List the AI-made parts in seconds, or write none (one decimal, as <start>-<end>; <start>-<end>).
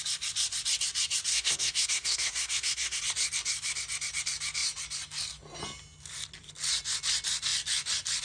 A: 1.3-3.0